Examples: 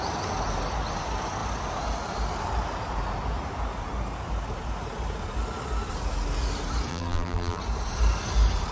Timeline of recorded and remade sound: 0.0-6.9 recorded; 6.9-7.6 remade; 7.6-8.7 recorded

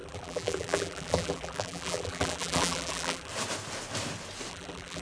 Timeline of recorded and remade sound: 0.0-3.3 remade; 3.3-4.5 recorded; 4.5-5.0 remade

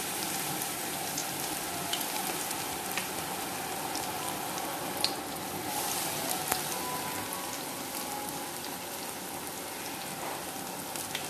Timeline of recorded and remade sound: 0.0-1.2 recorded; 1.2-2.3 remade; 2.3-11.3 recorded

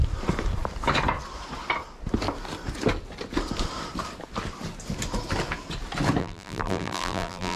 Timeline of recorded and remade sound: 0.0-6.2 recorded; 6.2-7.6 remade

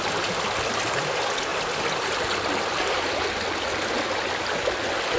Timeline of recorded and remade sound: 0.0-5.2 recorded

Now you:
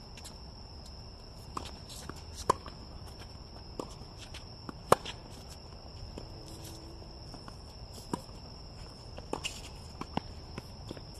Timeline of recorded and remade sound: 0.0-5.2 recorded; 5.2-9.7 remade; 9.7-11.2 recorded

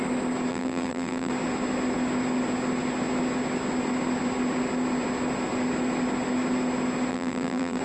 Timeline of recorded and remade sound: 0.0-0.5 recorded; 0.5-1.3 remade; 1.3-7.1 recorded; 7.1-7.8 remade